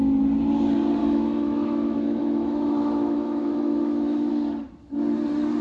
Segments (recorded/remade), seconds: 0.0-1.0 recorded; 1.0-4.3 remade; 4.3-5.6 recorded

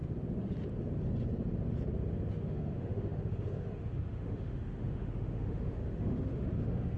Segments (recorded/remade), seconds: 0.0-2.3 recorded; 2.3-7.0 remade

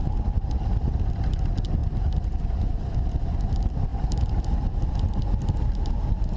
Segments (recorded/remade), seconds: 0.0-6.4 recorded

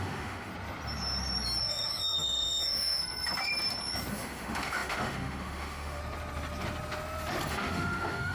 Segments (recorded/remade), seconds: 0.0-0.5 remade; 0.5-1.6 recorded; 1.6-3.0 remade; 3.0-4.1 recorded; 4.1-6.0 remade; 6.0-7.5 recorded; 7.5-8.3 remade

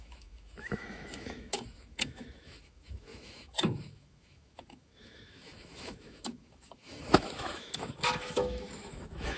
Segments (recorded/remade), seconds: 0.0-9.4 remade

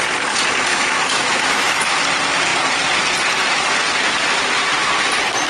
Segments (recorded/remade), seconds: 0.0-0.7 recorded; 0.7-2.0 remade; 2.0-5.5 recorded

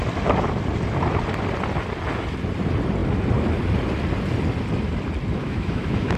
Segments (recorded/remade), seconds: 0.0-5.4 recorded; 5.4-6.2 remade